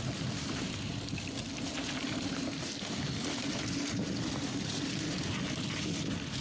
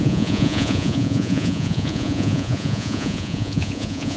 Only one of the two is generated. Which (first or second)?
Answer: second